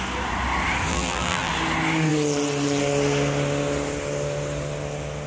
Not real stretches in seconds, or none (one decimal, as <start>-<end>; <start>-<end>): 0.9-1.5